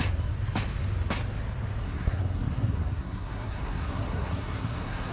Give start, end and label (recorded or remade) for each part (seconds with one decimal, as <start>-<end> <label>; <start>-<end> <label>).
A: 0.0-1.8 recorded; 1.8-5.1 remade